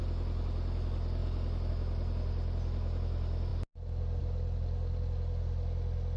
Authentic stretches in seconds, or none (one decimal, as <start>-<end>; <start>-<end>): 0.0-6.2